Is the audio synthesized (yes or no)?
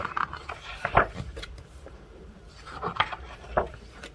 yes